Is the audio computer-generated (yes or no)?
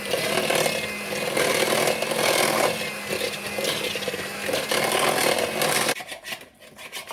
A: no